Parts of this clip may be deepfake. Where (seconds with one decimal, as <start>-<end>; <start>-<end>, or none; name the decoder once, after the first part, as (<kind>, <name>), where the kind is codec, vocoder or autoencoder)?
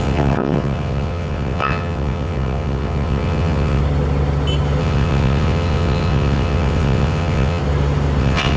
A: 0.0-3.8 (vocoder, WaveNeXt); 4.8-7.6; 8.2-8.6